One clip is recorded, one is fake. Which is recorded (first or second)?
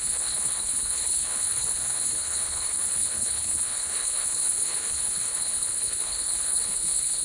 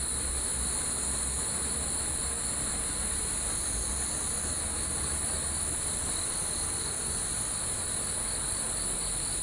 second